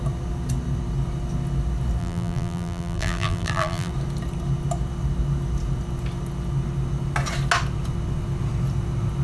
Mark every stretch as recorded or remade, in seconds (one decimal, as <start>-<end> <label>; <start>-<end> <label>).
0.0-2.0 recorded; 2.0-3.9 remade; 3.9-9.2 recorded